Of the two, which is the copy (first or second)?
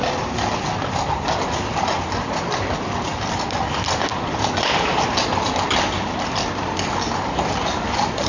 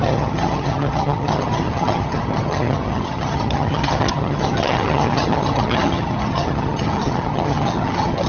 second